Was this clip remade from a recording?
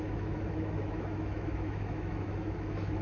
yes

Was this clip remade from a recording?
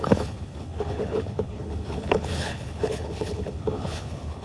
yes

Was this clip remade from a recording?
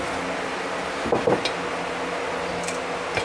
no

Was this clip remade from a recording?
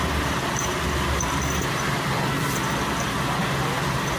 yes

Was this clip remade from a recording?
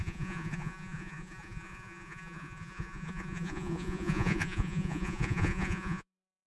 yes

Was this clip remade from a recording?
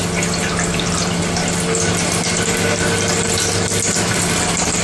no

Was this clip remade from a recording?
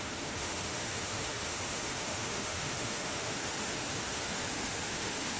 yes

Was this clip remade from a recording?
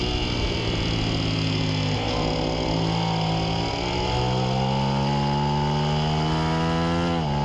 no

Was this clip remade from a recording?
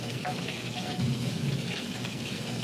yes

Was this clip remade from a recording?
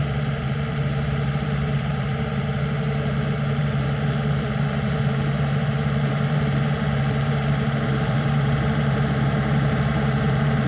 yes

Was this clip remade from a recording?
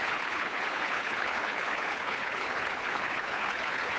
yes